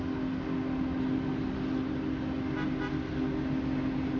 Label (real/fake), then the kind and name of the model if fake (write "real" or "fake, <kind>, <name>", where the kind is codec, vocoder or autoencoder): real